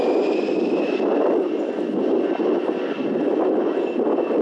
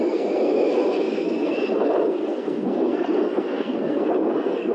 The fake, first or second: second